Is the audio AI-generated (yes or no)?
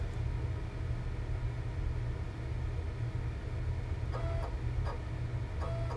no